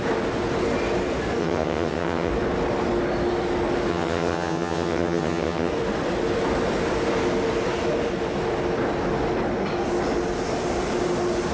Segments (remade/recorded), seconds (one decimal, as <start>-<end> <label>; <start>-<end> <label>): 0.0-1.4 recorded; 1.4-2.3 remade; 2.3-3.9 recorded; 3.9-5.7 remade; 5.7-11.5 recorded